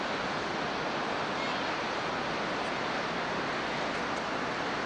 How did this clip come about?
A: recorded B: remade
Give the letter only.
A